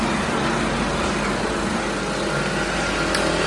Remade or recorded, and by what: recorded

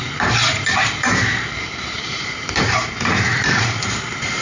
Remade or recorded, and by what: remade, vocoder, BigVGAN v2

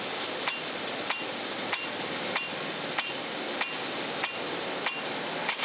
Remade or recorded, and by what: recorded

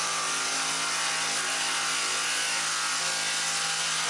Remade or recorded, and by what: recorded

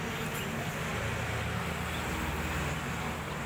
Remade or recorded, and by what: recorded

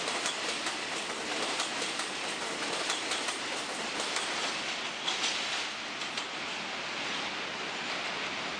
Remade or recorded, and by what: recorded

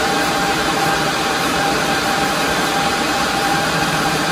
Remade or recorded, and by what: remade, vocoder, BigVGAN v2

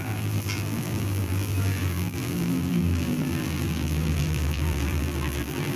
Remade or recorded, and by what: remade, vocoder, BigVGAN v2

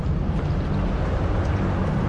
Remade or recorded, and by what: remade, vocoder, BigVGAN v2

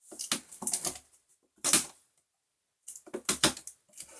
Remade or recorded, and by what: recorded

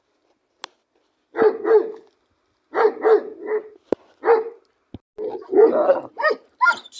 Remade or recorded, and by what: recorded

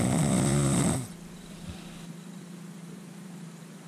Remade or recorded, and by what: remade, vocoder, BigVGAN v2